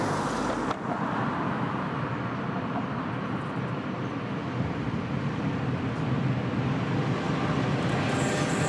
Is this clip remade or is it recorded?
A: recorded